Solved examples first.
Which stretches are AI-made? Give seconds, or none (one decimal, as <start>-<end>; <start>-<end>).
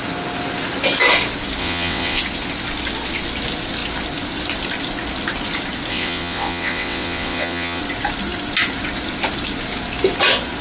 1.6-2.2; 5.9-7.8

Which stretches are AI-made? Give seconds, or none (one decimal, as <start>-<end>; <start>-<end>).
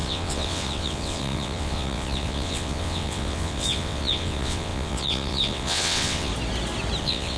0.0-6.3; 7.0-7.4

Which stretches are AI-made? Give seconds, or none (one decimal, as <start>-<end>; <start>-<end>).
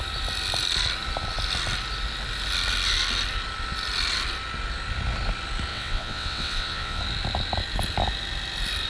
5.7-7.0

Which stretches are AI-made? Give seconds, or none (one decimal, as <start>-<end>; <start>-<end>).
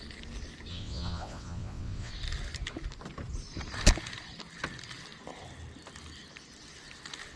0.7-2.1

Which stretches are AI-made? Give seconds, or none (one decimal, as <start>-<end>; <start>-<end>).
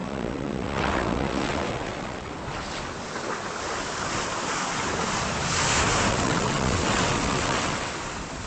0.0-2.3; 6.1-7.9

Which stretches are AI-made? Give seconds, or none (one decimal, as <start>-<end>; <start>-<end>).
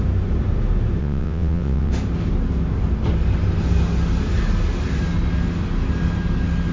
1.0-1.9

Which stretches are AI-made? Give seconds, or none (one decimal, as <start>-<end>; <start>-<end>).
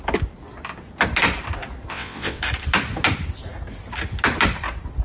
1.9-2.4